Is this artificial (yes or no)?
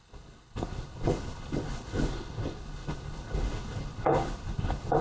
yes